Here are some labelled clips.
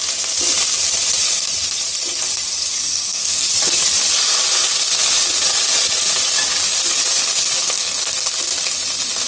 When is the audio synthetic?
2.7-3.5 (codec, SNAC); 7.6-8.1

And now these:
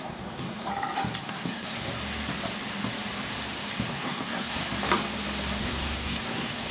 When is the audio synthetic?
0.0-0.7 (codec, SNAC); 1.2-1.9; 3.9-4.6; 5.6-6.7